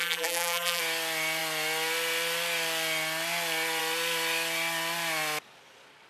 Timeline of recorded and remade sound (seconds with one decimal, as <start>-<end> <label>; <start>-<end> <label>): 0.0-0.8 remade; 0.8-6.1 recorded